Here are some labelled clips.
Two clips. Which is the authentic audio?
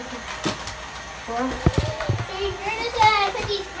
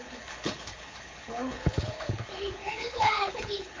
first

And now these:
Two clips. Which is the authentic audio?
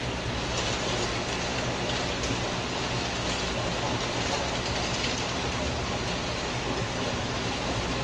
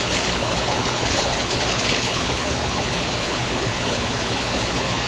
first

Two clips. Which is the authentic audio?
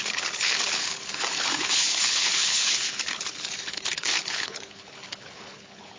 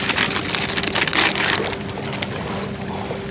second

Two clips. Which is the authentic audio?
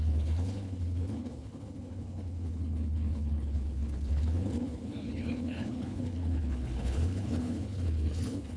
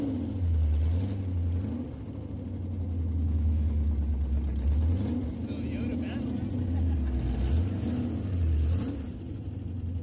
second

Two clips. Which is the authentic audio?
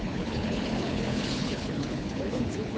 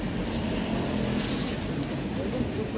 second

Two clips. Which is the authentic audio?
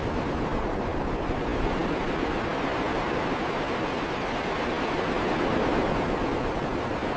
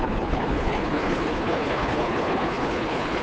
first